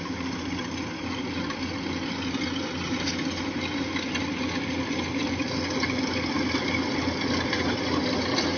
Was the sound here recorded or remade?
recorded